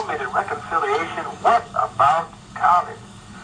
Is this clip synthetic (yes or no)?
yes